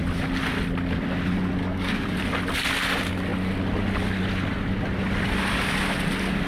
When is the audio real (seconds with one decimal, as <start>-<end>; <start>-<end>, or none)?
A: 0.0-1.6; 2.2-6.5